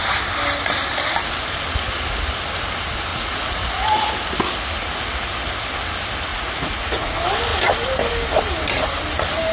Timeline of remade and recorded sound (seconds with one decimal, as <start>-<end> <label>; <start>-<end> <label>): 0.0-3.1 recorded; 3.1-4.1 remade; 4.1-6.3 recorded; 6.3-7.1 remade; 7.1-9.5 recorded